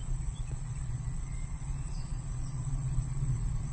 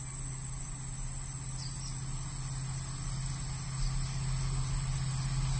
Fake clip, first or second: first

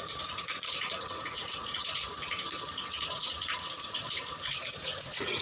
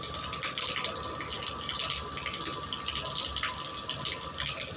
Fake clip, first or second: first